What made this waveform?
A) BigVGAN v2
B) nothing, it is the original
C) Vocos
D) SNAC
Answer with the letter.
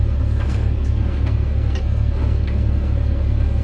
D